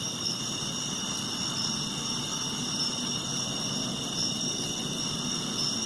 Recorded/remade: recorded